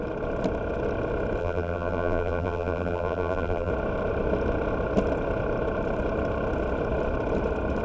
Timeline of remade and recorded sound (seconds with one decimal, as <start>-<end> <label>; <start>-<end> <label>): 0.0-1.4 recorded; 1.4-3.7 remade; 3.7-7.8 recorded